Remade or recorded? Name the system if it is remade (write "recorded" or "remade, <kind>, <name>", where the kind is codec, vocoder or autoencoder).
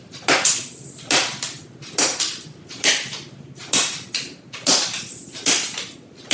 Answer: recorded